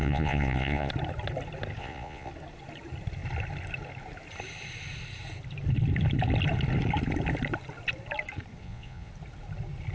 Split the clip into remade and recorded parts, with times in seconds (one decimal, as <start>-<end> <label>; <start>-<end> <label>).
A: 0.0-0.9 remade; 0.9-1.8 recorded; 1.8-2.3 remade; 2.3-8.6 recorded; 8.6-9.1 remade; 9.1-9.9 recorded